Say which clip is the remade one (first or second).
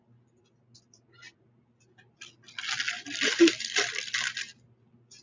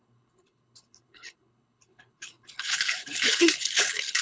second